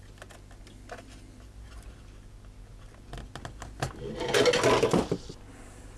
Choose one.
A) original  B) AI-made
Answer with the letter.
A